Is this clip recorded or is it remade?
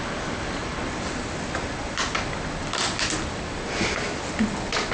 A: recorded